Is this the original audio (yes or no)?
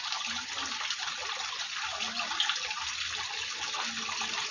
yes